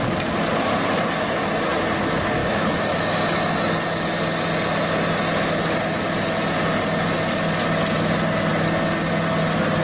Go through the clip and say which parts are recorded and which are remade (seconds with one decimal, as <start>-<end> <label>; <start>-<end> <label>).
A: 0.0-2.4 recorded; 2.4-3.1 remade; 3.1-9.8 recorded